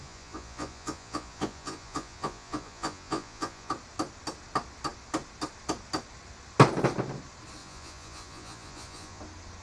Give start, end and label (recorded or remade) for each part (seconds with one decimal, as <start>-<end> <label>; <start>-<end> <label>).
0.0-3.7 remade; 3.7-7.6 recorded; 7.6-9.2 remade; 9.2-9.6 recorded